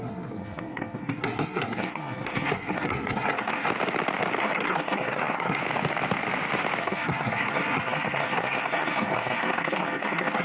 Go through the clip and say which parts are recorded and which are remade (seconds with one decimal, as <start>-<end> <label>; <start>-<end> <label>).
0.0-3.7 remade; 3.7-4.4 recorded; 4.4-5.6 remade; 5.6-6.8 recorded; 6.8-10.4 remade